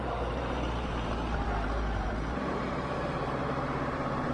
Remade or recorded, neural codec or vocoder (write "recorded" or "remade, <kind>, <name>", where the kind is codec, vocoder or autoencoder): remade, vocoder, BigVGAN v2